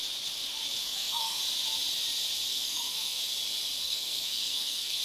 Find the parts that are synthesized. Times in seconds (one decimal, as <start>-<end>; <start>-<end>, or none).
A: 0.8-1.4; 2.5-3.2; 3.8-5.0